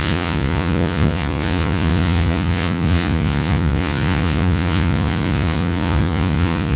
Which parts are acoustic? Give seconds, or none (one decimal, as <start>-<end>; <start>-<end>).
none

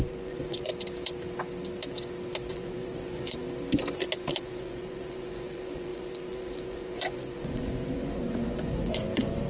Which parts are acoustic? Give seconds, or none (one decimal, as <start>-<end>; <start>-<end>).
0.7-2.5; 3.4-4.2

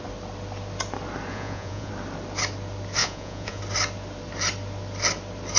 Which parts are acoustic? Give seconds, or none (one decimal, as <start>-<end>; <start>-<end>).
0.0-1.3; 1.9-3.0; 3.6-5.6

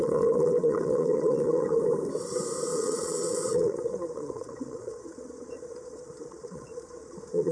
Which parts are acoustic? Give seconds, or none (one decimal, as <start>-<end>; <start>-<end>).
1.8-2.7

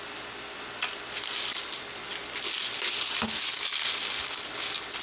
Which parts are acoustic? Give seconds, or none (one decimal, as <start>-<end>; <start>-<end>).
0.0-5.0

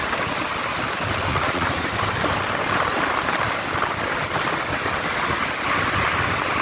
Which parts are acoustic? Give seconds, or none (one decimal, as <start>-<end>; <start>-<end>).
0.0-1.3; 1.9-6.6